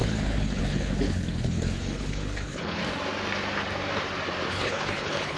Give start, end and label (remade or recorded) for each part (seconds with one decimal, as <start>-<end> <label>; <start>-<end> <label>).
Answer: 0.0-2.8 remade; 2.8-4.5 recorded; 4.5-5.4 remade